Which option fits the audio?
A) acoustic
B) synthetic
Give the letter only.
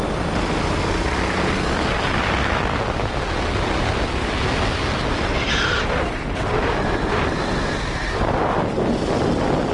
A